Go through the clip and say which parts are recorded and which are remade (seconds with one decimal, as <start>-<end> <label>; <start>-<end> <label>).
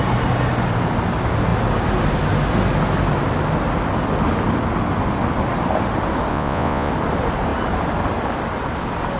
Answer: 0.0-6.3 recorded; 6.3-6.9 remade; 6.9-9.2 recorded